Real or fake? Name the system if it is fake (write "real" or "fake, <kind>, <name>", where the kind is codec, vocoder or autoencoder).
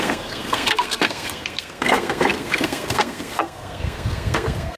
fake, codec, SNAC